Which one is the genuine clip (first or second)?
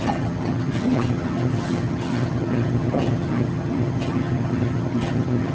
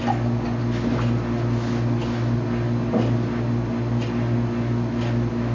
second